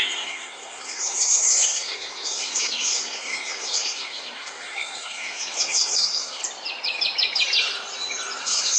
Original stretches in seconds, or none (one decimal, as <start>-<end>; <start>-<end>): 6.4-8.4